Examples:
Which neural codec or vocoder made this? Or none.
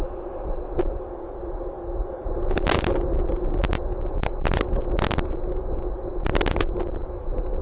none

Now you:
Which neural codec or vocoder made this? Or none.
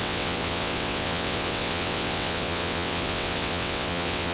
vocoder, WaveNeXt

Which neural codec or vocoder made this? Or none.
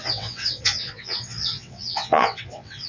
vocoder, WaveNeXt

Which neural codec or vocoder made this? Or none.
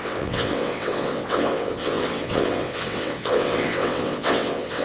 vocoder, WaveNeXt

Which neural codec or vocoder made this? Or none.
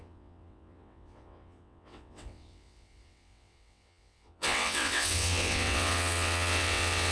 vocoder, WaveNeXt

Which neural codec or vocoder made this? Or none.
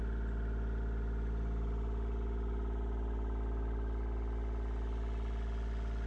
none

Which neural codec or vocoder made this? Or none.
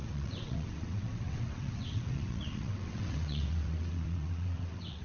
vocoder, WaveNeXt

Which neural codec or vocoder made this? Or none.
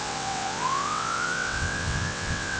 vocoder, WaveNeXt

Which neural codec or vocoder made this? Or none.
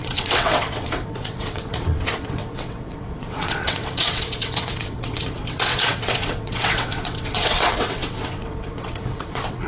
vocoder, WaveNeXt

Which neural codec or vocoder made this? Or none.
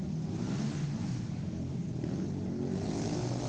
none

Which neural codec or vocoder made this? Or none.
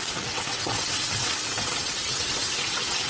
vocoder, WaveNeXt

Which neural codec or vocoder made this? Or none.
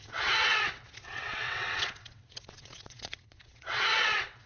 vocoder, WaveNeXt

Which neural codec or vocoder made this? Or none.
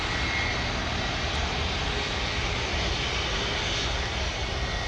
none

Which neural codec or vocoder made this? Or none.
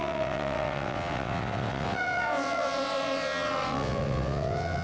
vocoder, WaveNeXt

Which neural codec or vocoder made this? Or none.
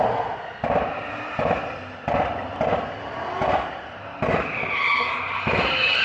none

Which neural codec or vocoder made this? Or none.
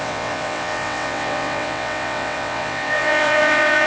vocoder, WaveNeXt